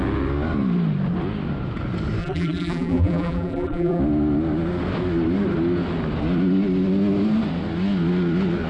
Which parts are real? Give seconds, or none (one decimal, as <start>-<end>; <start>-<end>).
0.0-2.2; 4.0-8.7